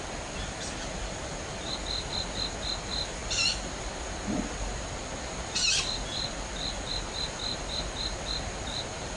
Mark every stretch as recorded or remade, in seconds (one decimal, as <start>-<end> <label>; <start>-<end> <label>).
0.0-9.2 recorded

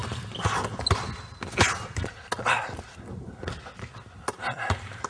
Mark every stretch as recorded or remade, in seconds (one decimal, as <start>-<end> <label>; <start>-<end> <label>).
0.0-5.1 recorded

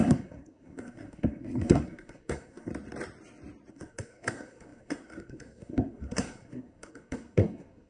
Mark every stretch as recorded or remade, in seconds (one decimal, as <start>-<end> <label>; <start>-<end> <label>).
0.0-2.7 remade; 2.7-3.7 recorded; 3.7-7.9 remade

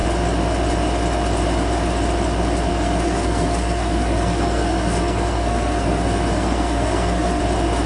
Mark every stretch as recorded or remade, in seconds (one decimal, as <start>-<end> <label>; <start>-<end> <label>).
0.0-2.7 recorded; 2.7-7.4 remade; 7.4-7.9 recorded

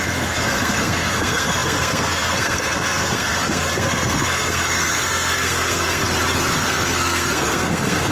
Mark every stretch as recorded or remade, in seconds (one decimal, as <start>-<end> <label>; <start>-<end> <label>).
0.0-6.0 remade; 6.0-6.5 recorded; 6.5-8.1 remade

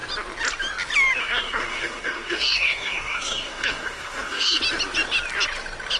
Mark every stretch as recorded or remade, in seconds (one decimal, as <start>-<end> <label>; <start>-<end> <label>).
0.0-1.2 recorded; 1.2-4.6 remade; 4.6-6.0 recorded

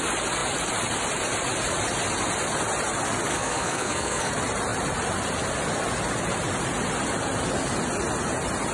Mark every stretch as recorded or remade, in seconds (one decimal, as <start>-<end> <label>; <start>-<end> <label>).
0.0-3.3 recorded; 3.3-4.3 remade; 4.3-8.7 recorded

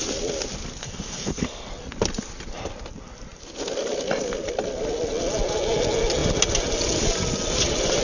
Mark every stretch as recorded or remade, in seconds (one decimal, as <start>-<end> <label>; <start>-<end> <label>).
0.0-0.8 recorded; 0.8-1.7 remade; 1.7-8.0 recorded